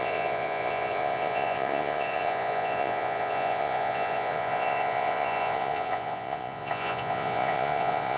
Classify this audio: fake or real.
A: fake